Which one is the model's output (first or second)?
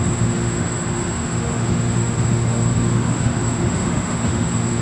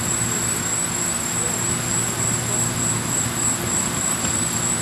first